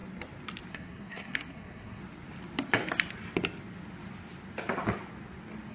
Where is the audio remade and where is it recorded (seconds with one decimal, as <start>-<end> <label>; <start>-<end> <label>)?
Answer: 0.0-0.7 recorded; 0.7-2.0 remade; 2.0-5.7 recorded